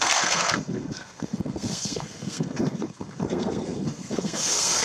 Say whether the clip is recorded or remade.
remade